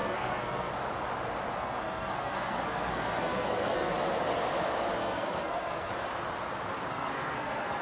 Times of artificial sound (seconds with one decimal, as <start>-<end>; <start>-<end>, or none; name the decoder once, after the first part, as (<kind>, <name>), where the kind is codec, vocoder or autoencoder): 0.0-0.7 (codec, SNAC); 1.6-3.9; 5.0-5.9; 6.9-7.8